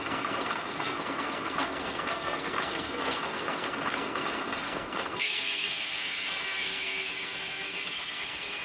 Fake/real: fake